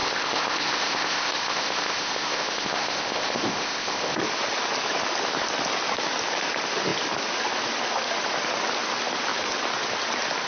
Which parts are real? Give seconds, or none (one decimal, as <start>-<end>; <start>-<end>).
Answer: 4.2-10.5

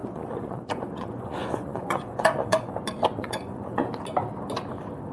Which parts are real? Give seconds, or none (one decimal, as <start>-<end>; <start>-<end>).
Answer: 2.7-3.2; 3.9-5.1

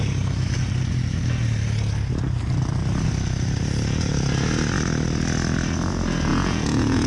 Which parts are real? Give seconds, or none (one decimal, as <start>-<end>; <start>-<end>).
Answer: 0.0-6.3

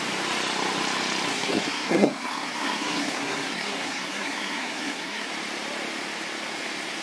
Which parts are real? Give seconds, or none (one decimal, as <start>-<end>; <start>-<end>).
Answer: 0.0-1.3; 5.3-7.0

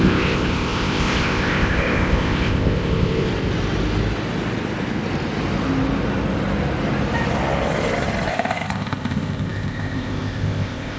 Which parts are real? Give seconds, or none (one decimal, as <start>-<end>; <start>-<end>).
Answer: 3.3-8.3